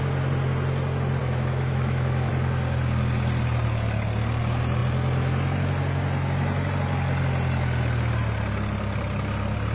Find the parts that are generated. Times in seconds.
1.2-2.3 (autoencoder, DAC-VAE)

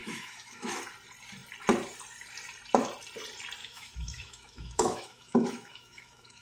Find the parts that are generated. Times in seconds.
0.0-0.8 (autoencoder, DAC-VAE); 3.6-6.4

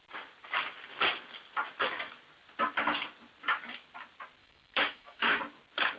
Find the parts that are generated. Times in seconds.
4.4-5.4 (autoencoder, DAC-VAE)

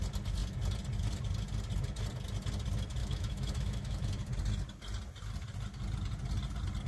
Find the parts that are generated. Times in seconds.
3.0-4.1 (autoencoder, DAC-VAE)

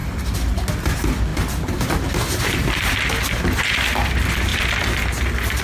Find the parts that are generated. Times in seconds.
none

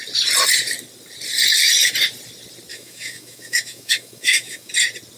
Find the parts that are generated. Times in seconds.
2.7-4.7 (autoencoder, DAC-VAE)

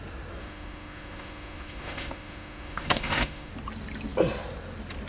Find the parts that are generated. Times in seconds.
0.4-3.5 (autoencoder, DAC-VAE)